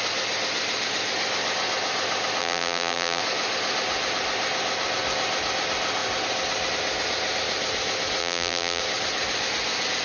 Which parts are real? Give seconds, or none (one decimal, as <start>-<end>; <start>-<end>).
0.0-2.4; 3.2-8.2; 8.8-10.0